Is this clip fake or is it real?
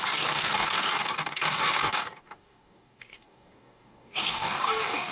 fake